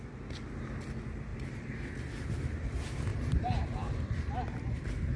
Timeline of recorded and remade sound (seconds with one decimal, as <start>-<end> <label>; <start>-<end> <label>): 0.0-1.3 recorded; 1.3-1.9 remade; 1.9-3.1 recorded; 3.1-5.2 remade